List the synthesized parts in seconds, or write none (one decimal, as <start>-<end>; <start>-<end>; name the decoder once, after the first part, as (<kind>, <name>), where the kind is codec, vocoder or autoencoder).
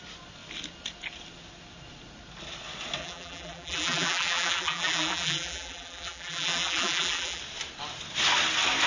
3.0-7.4 (vocoder, BigVGAN v2)